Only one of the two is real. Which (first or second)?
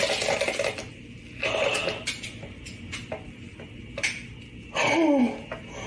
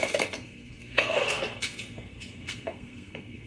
first